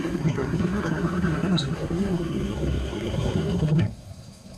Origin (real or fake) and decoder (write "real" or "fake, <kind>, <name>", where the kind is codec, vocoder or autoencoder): fake, codec, SNAC